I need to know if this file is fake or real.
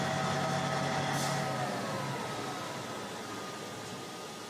real